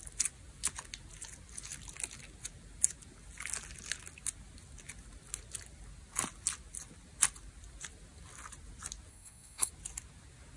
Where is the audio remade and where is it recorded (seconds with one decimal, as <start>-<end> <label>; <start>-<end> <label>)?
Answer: 0.0-9.1 recorded; 9.1-9.7 remade; 9.7-10.6 recorded